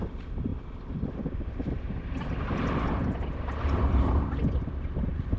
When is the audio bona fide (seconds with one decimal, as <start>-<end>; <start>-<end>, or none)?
0.5-3.7